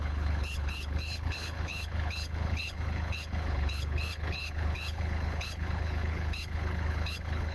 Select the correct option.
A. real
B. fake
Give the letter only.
B